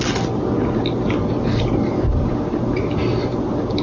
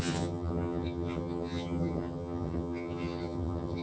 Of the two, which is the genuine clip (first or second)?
first